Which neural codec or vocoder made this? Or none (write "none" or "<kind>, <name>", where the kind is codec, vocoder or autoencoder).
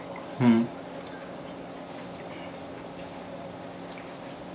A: none